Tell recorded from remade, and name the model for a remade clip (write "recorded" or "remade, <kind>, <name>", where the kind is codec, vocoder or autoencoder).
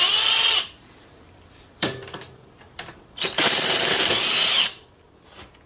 recorded